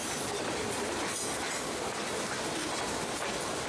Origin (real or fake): real